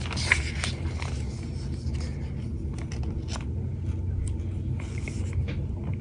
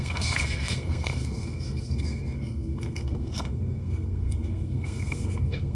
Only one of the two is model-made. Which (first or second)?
second